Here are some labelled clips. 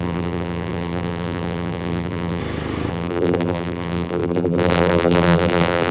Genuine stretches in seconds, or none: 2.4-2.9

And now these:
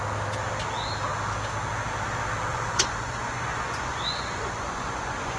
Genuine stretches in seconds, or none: 0.0-2.5

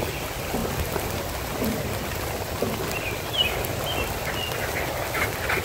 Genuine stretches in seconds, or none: 0.0-5.6

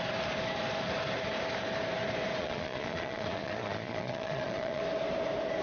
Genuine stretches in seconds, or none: 0.0-2.4; 4.8-5.6

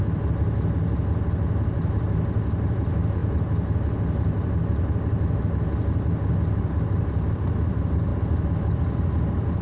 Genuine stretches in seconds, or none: 0.0-9.6

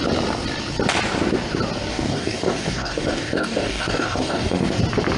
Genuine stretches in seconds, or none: 0.0-1.9; 4.8-5.2